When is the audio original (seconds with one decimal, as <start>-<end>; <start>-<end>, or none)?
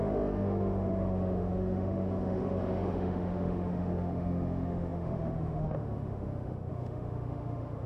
none